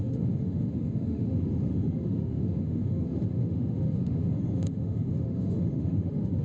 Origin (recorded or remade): remade